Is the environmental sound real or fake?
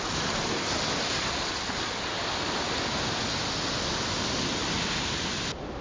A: real